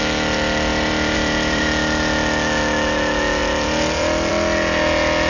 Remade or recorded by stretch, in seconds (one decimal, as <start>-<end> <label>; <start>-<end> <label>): 0.0-0.7 recorded; 0.7-1.6 remade; 1.6-3.4 recorded; 3.4-4.3 remade; 4.3-5.3 recorded